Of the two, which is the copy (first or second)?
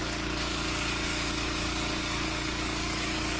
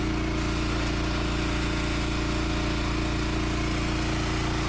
first